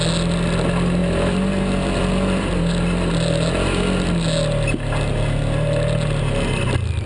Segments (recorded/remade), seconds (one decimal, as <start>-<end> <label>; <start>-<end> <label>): 0.0-1.0 recorded; 1.0-3.3 remade; 3.3-7.1 recorded

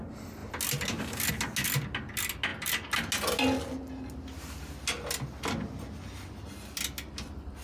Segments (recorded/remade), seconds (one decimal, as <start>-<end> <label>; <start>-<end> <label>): 0.0-7.6 recorded

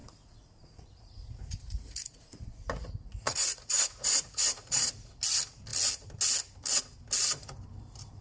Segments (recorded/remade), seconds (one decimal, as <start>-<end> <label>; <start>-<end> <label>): 0.0-4.9 remade; 4.9-8.2 recorded

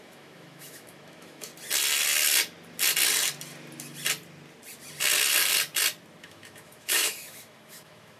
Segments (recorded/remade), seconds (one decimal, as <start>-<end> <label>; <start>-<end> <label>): 0.0-1.5 remade; 1.5-6.2 recorded; 6.2-8.2 remade

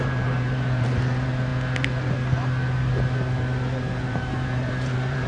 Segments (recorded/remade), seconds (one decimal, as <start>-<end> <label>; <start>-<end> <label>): 0.0-1.5 remade; 1.5-4.0 recorded; 4.0-5.3 remade

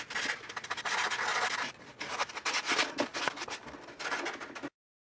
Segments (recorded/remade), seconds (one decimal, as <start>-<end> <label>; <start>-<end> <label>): 0.0-5.0 recorded